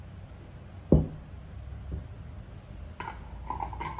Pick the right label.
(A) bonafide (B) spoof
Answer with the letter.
A